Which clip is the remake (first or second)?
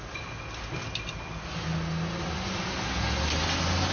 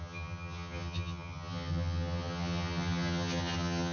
second